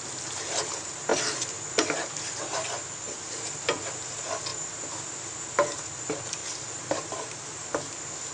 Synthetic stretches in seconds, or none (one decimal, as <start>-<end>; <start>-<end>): 6.4-7.4